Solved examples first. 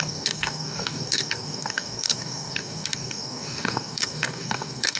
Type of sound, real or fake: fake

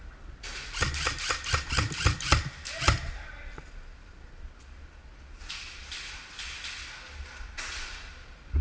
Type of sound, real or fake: real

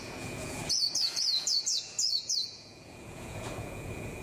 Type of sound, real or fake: fake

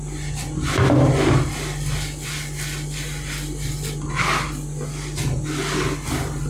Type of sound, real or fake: real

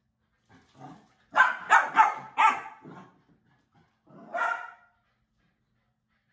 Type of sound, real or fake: real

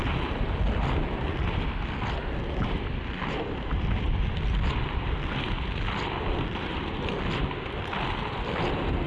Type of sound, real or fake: real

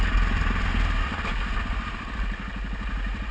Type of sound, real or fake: real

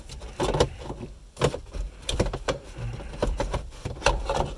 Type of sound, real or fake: fake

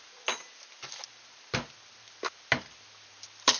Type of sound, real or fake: real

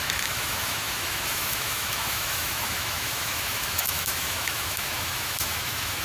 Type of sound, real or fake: fake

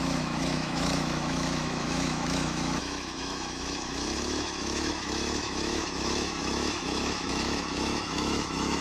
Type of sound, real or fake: fake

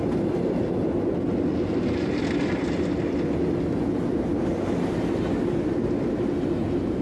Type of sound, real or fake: real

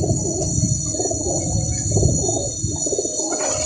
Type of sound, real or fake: real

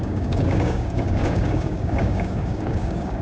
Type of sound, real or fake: fake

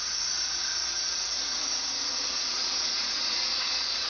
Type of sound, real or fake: fake